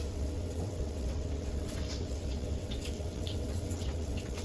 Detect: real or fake fake